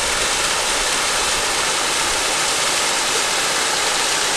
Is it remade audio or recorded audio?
recorded